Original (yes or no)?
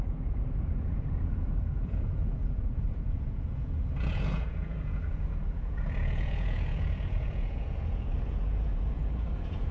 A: no